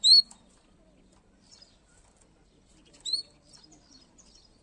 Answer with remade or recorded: remade